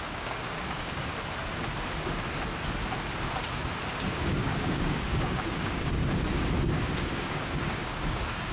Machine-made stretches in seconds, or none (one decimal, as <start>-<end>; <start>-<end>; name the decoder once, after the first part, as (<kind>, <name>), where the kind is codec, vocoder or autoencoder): 0.0-1.1 (codec, DAC); 4.2-6.0; 6.7-8.5